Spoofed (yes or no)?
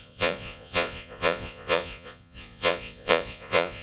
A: yes